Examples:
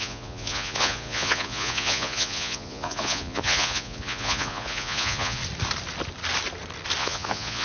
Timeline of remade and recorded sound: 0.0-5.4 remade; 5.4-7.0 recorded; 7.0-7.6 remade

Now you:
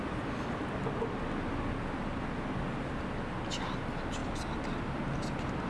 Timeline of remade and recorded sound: 0.0-5.7 recorded

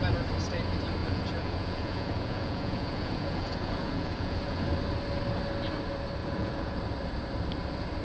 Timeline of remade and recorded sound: 0.0-1.0 recorded; 1.0-4.6 remade; 4.6-6.2 recorded; 6.2-6.8 remade; 6.8-8.0 recorded

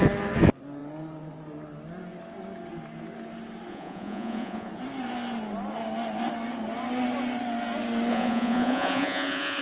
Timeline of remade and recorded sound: 0.0-3.7 recorded; 3.7-4.7 remade; 4.7-8.1 recorded; 8.1-9.6 remade